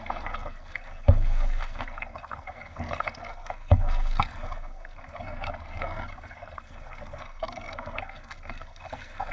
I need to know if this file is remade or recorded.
remade